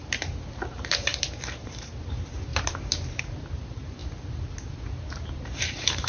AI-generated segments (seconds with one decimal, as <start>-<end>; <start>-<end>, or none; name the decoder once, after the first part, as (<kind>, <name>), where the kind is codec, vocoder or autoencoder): 0.0-4.0 (vocoder, BigVGAN v2); 5.0-6.1